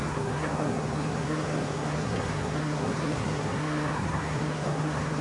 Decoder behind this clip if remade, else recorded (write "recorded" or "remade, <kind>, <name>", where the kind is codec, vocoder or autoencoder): remade, codec, SNAC